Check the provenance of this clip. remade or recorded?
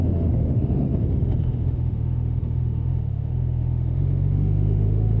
remade